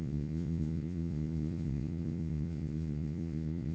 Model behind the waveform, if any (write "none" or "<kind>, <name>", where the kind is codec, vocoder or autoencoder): vocoder, Vocos